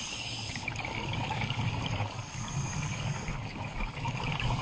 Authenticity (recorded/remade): remade